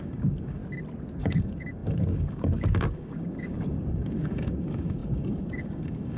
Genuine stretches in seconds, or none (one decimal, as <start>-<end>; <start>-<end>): 0.6-1.2